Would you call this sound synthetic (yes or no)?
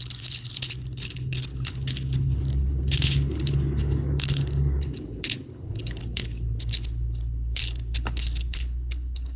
yes